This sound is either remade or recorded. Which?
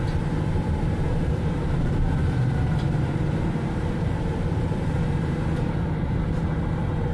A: remade